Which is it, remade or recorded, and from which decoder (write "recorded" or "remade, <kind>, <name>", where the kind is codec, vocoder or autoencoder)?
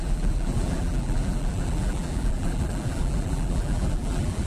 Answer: remade, vocoder, BigVGAN v2